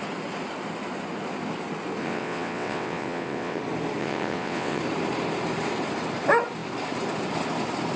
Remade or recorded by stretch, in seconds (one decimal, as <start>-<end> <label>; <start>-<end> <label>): 0.0-2.0 recorded; 2.0-3.6 remade; 3.6-4.0 recorded; 4.0-4.8 remade; 4.8-8.0 recorded